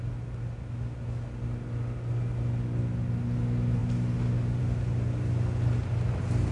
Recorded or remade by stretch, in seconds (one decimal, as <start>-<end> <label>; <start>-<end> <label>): 0.0-6.5 recorded